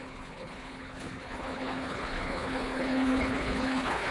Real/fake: fake